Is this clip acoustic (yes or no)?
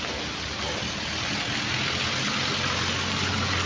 yes